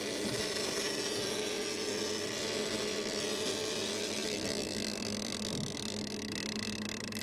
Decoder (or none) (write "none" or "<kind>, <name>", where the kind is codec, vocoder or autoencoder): none